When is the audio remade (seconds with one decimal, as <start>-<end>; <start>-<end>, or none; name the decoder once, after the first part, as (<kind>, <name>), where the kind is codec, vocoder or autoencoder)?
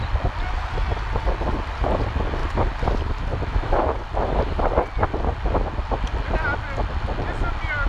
2.4-4.8 (vocoder, BigVGAN v2)